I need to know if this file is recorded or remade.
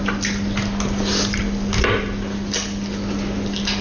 recorded